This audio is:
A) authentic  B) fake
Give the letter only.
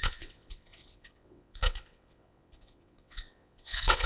B